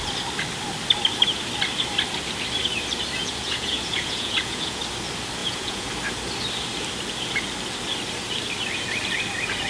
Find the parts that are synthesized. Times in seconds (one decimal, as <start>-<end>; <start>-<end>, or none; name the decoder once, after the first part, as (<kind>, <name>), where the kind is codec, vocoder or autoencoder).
3.2-4.8 (vocoder, Vocos); 5.4-5.9